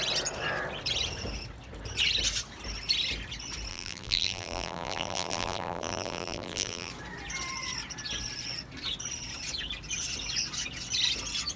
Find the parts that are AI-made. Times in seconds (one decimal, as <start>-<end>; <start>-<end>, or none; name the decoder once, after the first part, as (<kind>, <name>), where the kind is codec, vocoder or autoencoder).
3.7-6.9 (vocoder, BigVGAN v2)